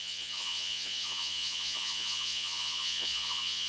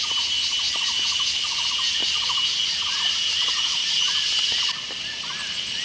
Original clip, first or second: second